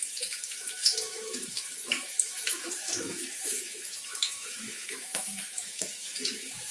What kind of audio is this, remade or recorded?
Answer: remade